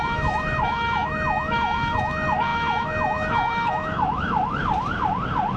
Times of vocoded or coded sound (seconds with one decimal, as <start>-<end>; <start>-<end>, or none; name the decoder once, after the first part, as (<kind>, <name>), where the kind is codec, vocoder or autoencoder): 0.0-4.6 (autoencoder, DAC-VAE)